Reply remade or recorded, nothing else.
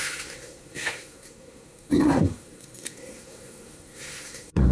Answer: remade